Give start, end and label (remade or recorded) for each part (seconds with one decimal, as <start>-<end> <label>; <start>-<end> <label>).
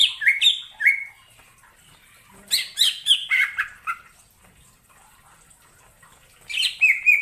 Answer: 0.0-1.1 remade; 1.1-3.2 recorded; 3.2-4.4 remade; 4.4-7.2 recorded